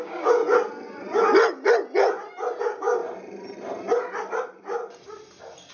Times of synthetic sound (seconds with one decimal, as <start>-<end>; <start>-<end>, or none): 0.0-0.4; 2.6-3.0